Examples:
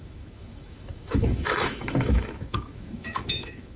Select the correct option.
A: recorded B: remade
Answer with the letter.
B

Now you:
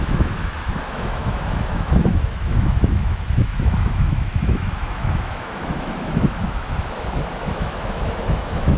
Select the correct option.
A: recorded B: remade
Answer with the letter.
B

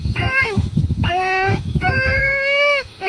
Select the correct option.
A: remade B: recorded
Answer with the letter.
A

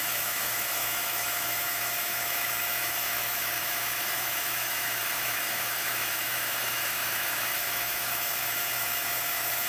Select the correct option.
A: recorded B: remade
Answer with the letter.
B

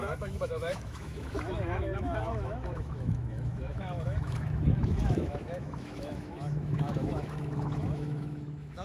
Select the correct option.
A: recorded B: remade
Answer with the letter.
B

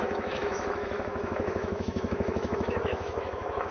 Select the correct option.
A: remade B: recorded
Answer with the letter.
A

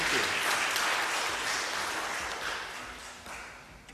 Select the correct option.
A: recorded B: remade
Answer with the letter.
A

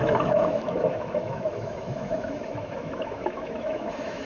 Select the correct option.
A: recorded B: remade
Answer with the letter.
B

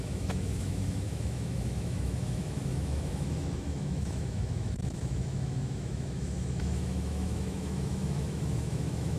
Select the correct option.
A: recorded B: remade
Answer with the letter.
B